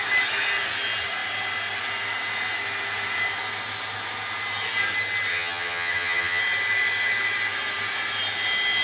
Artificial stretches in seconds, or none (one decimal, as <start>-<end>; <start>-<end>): 5.3-6.4